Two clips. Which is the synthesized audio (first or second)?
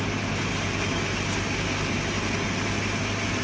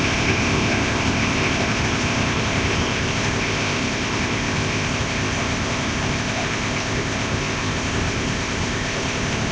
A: second